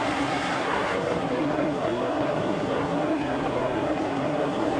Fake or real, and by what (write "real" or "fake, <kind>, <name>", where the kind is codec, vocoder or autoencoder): fake, codec, SNAC